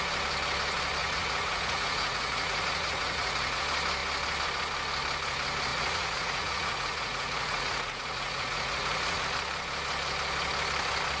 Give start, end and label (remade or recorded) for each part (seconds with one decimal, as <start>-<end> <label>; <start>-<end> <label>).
0.0-1.0 recorded; 1.0-3.6 remade; 3.6-5.7 recorded; 5.7-9.2 remade; 9.2-11.2 recorded